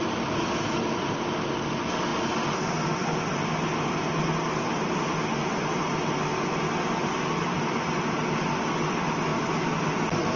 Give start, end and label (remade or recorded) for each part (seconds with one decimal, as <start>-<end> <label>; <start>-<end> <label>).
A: 0.0-10.4 recorded

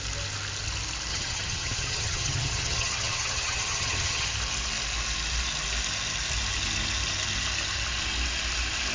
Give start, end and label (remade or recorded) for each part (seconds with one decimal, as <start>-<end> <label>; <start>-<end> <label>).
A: 0.0-1.1 recorded; 1.1-4.3 remade; 4.3-8.9 recorded